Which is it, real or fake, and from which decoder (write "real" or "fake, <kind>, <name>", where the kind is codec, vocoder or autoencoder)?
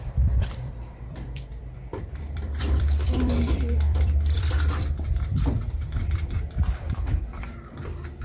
fake, vocoder, BigVGAN v2